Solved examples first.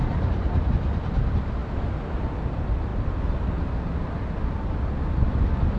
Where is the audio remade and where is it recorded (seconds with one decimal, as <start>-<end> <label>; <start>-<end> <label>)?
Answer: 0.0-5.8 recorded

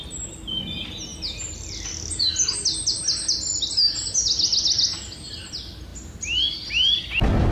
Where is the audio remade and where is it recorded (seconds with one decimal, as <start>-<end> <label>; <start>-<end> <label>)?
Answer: 0.0-7.5 recorded

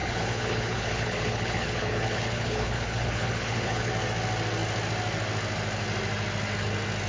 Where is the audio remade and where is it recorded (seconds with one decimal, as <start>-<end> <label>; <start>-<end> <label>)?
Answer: 0.0-3.9 remade; 3.9-7.1 recorded

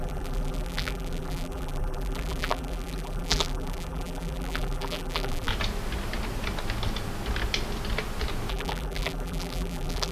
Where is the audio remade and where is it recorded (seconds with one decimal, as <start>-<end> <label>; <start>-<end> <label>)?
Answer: 0.0-5.5 remade; 5.5-8.5 recorded; 8.5-10.1 remade